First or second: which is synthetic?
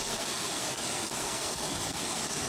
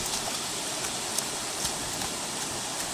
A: first